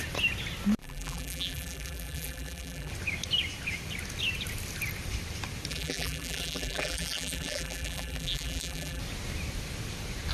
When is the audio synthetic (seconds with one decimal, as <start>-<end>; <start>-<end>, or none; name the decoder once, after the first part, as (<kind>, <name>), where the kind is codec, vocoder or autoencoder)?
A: 0.8-2.9 (vocoder, BigVGAN v2); 5.7-9.0